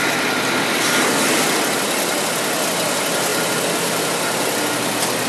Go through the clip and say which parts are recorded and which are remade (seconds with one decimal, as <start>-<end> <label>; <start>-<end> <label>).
0.0-5.3 recorded